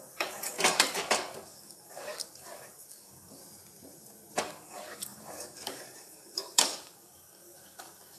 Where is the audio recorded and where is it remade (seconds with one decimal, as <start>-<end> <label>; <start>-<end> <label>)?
0.0-3.4 remade; 3.4-4.4 recorded; 4.4-8.2 remade